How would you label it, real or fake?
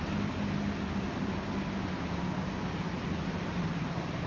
real